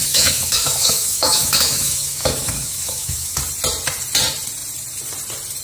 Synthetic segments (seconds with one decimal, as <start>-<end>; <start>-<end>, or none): 0.0-3.4